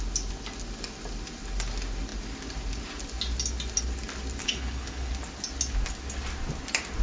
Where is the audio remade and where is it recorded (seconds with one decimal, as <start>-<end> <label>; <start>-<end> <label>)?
0.0-4.4 recorded; 4.4-5.1 remade; 5.1-7.0 recorded